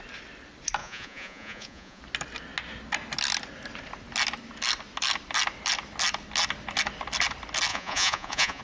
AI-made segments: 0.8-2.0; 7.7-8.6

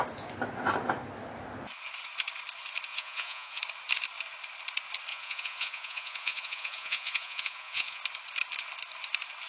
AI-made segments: 2.9-3.6; 5.1-8.0

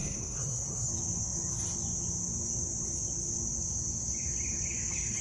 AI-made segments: 0.0-0.9

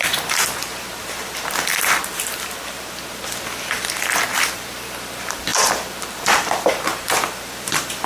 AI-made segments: 0.0-8.1

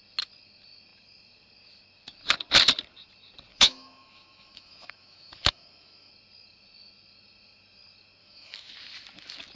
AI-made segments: 3.5-6.1; 8.2-8.7

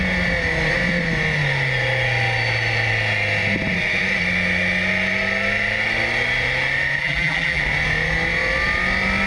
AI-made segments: 7.0-7.6

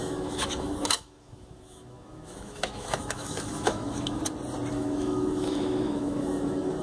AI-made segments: 0.0-4.2; 4.7-6.8